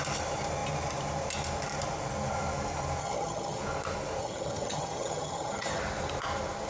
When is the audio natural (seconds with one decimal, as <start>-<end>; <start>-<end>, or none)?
0.0-3.0; 3.6-4.2; 5.8-6.7